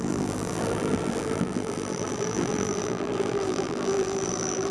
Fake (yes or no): yes